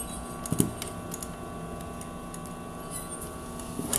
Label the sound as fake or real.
real